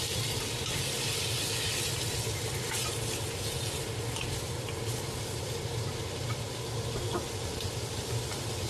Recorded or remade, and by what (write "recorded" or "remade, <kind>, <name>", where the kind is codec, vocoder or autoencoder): recorded